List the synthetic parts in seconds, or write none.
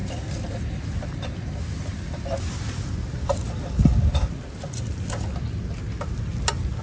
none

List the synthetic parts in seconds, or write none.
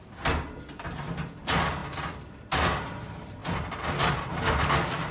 none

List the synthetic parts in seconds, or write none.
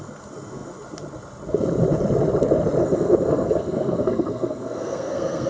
2.8-5.5 (codec, SNAC)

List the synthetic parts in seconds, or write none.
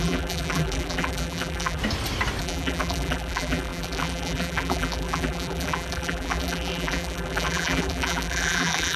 0.0-1.8 (vocoder, BigVGAN v2); 2.4-9.0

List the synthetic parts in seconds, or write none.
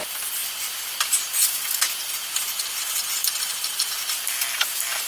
none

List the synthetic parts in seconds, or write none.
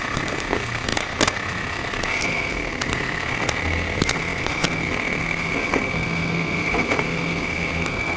0.0-8.2 (codec, SNAC)